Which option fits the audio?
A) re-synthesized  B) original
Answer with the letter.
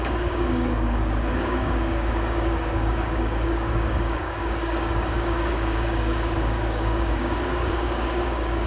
A